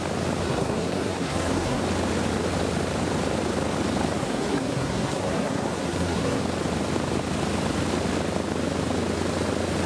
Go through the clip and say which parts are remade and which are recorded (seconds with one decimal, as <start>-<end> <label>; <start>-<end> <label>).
0.0-0.4 recorded; 0.4-1.8 remade; 1.8-4.2 recorded; 4.2-6.4 remade; 6.4-9.9 recorded